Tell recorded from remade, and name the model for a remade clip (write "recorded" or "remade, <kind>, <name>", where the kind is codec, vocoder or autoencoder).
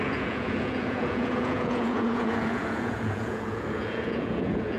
remade, vocoder, Vocos